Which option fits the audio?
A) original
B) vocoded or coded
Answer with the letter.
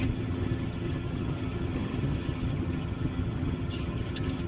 B